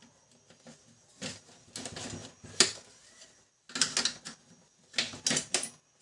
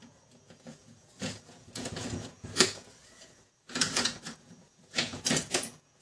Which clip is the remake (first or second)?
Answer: second